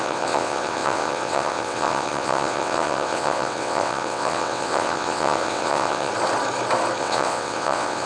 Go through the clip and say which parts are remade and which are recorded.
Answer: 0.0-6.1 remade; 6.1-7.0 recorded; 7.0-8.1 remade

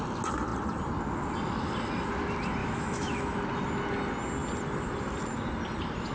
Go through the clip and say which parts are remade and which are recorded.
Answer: 0.0-2.6 recorded; 2.6-3.4 remade; 3.4-6.1 recorded

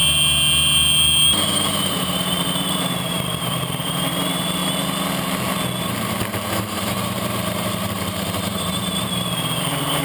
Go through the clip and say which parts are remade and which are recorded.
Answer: 0.0-1.5 recorded; 1.5-4.6 remade; 4.6-5.8 recorded; 5.8-10.0 remade

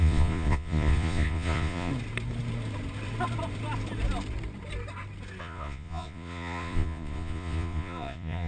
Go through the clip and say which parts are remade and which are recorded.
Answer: 0.0-1.9 remade; 1.9-5.4 recorded; 5.4-8.5 remade